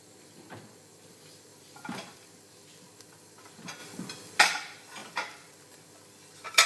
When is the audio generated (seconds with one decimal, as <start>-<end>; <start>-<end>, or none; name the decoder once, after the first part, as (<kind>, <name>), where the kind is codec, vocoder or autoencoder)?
1.5-2.3 (vocoder, BigVGAN v2); 5.0-5.5